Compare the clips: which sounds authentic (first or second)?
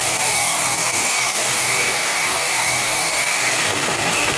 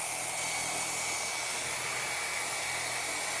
second